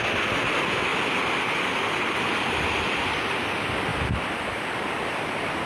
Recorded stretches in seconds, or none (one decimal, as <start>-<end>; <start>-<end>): 0.0-5.7